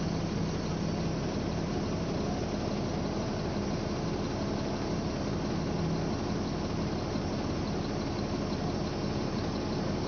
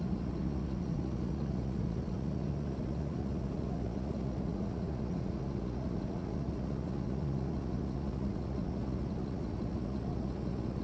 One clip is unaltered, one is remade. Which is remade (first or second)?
second